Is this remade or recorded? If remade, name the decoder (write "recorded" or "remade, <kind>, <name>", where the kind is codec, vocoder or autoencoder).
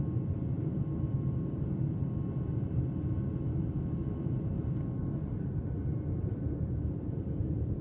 recorded